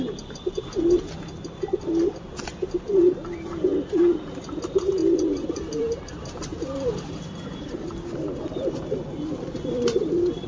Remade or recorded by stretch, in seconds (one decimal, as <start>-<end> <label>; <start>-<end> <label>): 0.0-3.7 recorded; 3.7-4.6 remade; 4.6-5.0 recorded; 5.0-6.1 remade; 6.1-6.5 recorded; 6.5-10.5 remade